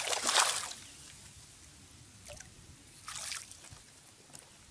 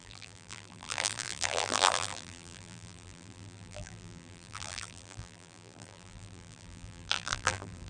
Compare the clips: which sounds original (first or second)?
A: first